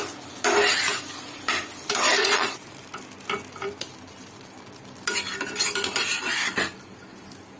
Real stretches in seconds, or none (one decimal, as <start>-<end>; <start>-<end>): 0.0-2.2; 2.7-7.6